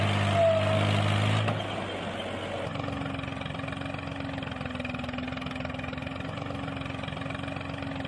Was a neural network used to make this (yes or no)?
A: no